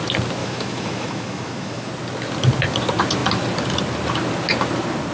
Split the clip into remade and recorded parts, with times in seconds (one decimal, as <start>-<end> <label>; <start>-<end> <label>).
0.0-0.4 recorded; 0.4-1.9 remade; 1.9-5.1 recorded